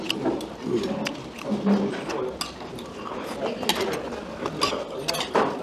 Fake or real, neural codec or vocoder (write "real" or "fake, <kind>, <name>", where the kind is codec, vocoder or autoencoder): real